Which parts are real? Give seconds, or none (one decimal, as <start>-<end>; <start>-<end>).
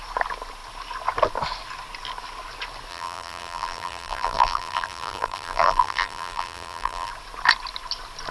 0.0-2.9; 7.1-8.3